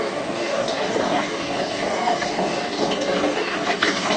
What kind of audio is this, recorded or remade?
remade